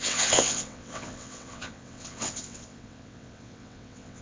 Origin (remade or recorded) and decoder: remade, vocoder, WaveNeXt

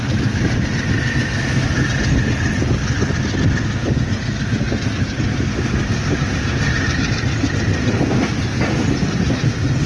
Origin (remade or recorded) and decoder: recorded